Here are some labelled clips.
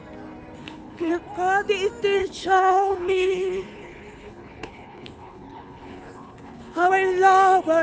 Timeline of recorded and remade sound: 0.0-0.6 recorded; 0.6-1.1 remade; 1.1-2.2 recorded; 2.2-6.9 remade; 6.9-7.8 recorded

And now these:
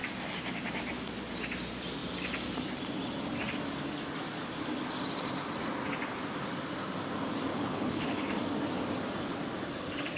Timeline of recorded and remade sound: 0.0-7.5 recorded; 7.5-8.3 remade; 8.3-10.2 recorded